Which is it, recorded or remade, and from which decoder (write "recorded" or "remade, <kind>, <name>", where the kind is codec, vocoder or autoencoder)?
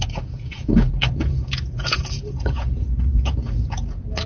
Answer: remade, vocoder, Vocos